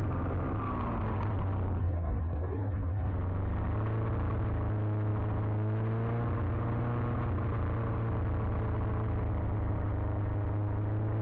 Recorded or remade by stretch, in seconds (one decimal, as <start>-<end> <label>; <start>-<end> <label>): 0.0-1.8 recorded; 1.8-3.1 remade; 3.1-11.2 recorded